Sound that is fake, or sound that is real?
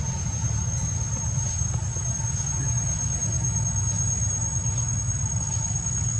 real